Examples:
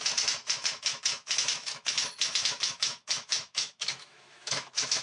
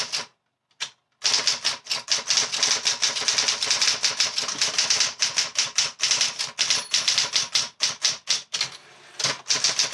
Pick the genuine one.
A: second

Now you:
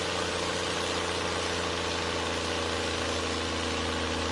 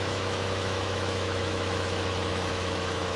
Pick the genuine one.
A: first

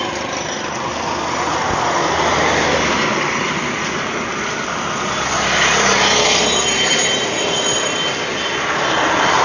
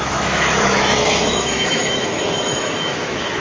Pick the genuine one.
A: first